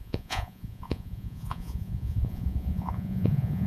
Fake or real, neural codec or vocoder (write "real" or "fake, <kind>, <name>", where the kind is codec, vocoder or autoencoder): fake, vocoder, Vocos